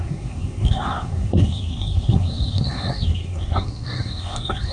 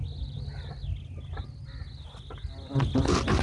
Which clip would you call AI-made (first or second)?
first